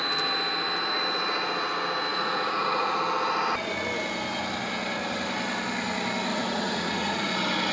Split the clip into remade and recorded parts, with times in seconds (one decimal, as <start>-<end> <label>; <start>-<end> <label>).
0.0-2.1 recorded; 2.1-3.0 remade; 3.0-6.3 recorded; 6.3-7.3 remade; 7.3-7.7 recorded